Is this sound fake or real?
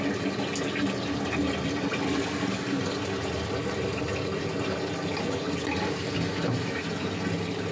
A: real